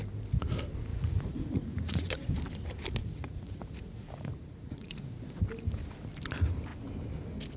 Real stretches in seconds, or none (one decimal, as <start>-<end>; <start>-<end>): 0.0-0.9; 2.3-3.0; 5.4-7.6